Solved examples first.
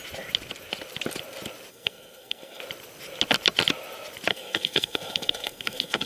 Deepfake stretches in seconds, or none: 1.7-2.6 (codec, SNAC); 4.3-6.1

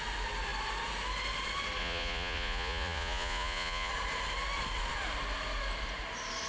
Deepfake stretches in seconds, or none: 1.8-3.9 (vocoder, Vocos)